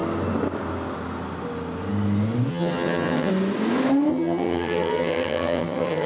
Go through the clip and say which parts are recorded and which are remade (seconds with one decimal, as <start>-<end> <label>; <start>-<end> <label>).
0.0-2.5 recorded; 2.5-3.3 remade; 3.3-4.1 recorded; 4.1-6.1 remade